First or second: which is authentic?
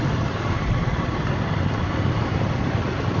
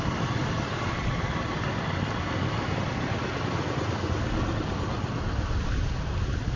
second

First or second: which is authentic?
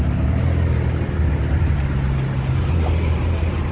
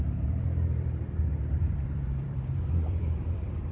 first